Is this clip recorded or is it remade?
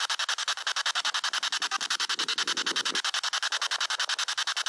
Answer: recorded